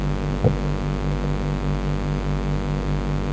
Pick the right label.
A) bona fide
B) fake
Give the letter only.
A